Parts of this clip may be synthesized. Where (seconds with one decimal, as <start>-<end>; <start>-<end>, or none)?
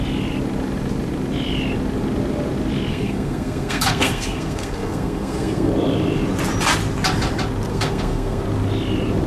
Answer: 2.9-5.7; 7.7-8.4